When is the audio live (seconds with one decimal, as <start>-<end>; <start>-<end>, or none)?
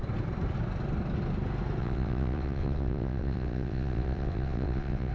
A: 0.0-1.8